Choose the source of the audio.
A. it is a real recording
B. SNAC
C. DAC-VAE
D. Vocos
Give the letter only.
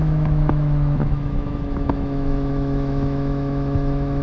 C